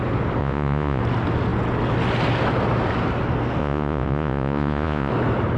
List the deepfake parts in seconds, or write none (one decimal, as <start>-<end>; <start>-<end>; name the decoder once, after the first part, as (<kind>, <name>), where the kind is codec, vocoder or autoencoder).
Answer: 0.4-1.0 (vocoder, Vocos); 3.6-5.1